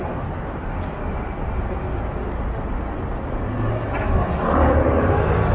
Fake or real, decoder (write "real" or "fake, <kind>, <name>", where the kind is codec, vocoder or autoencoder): real